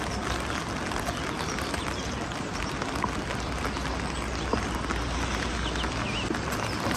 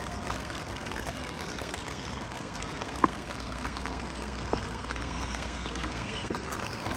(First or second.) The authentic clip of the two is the first